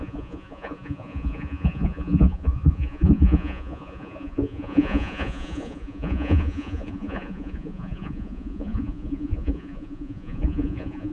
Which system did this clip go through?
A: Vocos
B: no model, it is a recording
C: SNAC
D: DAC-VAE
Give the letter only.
A